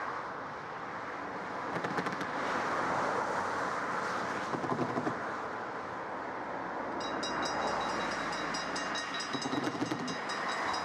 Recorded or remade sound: recorded